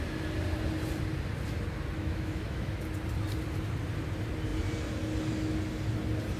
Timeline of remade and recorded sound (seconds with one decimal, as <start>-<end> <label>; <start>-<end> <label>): 0.0-2.0 recorded; 2.0-2.7 remade; 2.7-6.4 recorded